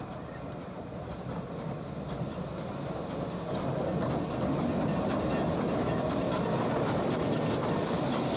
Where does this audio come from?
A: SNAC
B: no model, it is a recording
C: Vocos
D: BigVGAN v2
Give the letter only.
B